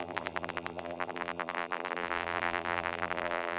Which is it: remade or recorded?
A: remade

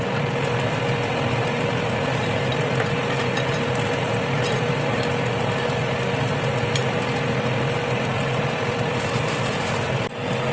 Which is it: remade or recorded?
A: remade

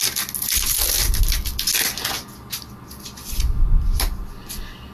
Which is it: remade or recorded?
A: recorded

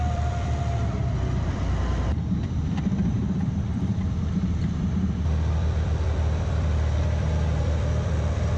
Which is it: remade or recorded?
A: remade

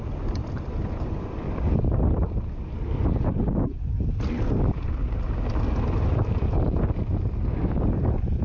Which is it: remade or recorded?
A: recorded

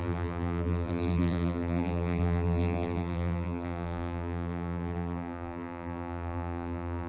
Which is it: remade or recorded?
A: remade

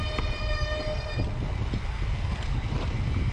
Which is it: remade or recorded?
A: recorded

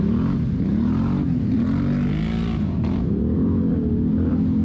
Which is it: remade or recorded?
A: recorded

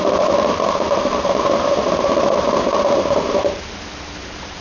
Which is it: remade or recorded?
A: remade